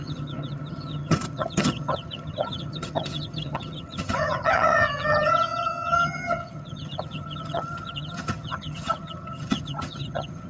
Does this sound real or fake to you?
fake